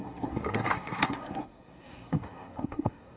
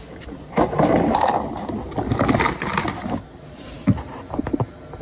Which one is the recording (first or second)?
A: second